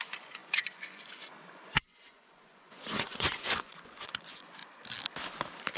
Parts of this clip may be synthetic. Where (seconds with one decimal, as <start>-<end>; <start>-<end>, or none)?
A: 0.0-4.6